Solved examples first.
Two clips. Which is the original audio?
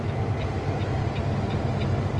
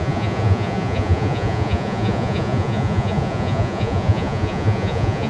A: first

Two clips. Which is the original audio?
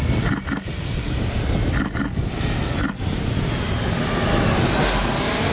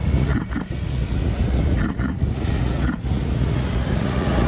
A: first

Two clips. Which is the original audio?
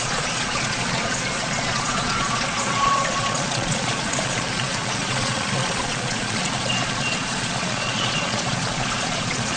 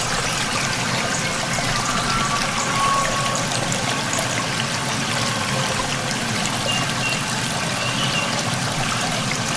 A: second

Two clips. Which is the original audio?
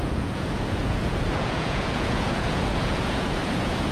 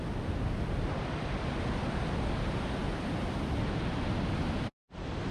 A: second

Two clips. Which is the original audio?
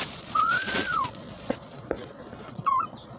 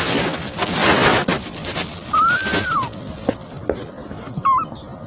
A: second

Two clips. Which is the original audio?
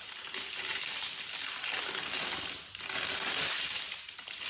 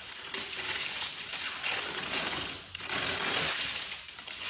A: first